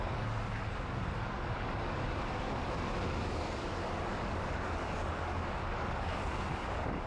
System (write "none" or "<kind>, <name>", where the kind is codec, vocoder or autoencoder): codec, DAC